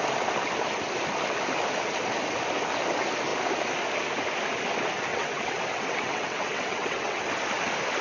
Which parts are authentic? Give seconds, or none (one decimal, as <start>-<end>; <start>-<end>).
0.0-5.1; 7.2-8.0